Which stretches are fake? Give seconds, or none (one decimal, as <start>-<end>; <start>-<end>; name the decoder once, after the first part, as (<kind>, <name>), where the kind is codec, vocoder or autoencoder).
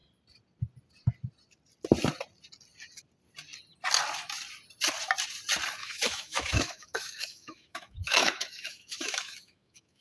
5.8-10.0 (autoencoder, DAC-VAE)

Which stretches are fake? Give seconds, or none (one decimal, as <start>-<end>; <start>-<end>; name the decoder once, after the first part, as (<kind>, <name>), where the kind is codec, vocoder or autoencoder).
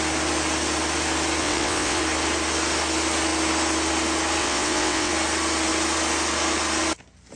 1.4-2.0 (vocoder, WaveNeXt); 4.4-5.1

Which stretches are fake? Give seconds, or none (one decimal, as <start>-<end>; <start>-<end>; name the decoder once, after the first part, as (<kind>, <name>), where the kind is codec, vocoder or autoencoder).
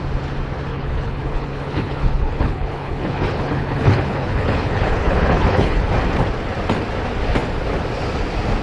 0.7-5.9 (codec, HILCodec)